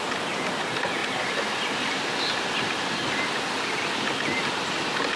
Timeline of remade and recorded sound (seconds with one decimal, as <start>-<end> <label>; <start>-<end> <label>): 0.0-5.2 recorded